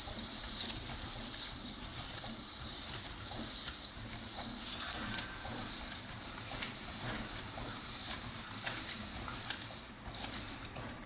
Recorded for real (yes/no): no